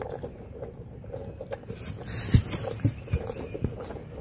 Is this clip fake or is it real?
real